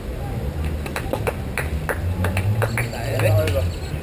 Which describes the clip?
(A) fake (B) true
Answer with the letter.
B